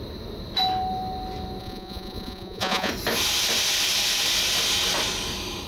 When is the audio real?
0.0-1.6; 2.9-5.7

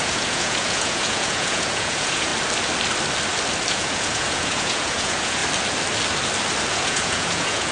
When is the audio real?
2.3-3.7; 5.4-6.7

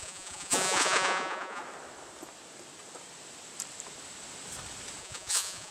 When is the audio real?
1.6-5.0

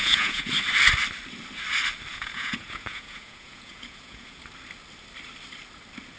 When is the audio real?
0.5-2.1; 4.4-6.2

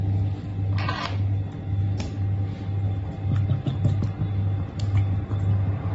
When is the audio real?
0.0-5.9

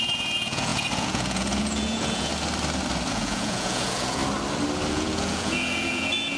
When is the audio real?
2.3-3.1; 4.2-4.9